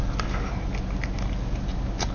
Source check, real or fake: real